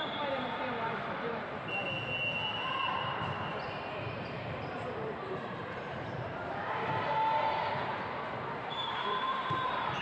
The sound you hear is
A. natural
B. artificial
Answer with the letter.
B